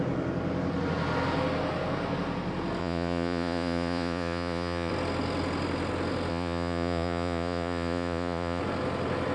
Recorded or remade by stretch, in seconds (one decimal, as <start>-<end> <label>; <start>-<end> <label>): 0.0-2.8 recorded; 2.8-4.9 remade; 4.9-6.3 recorded; 6.3-8.6 remade; 8.6-9.3 recorded